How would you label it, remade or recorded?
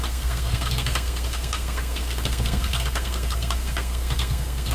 remade